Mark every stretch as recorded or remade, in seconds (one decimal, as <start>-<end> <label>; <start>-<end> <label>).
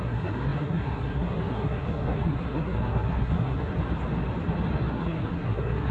0.0-3.7 remade; 3.7-4.9 recorded; 4.9-5.9 remade